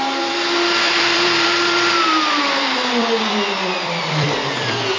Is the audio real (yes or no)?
no